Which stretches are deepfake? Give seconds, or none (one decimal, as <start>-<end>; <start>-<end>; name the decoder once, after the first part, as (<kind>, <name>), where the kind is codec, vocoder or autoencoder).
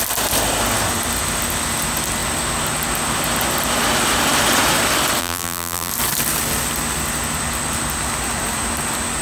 5.2-5.9 (vocoder, BigVGAN v2)